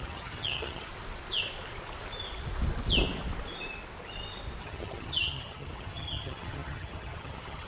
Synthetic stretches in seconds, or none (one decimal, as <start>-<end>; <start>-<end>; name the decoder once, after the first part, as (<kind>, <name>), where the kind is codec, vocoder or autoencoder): 0.0-0.9 (vocoder, HiFi-GAN); 4.6-7.7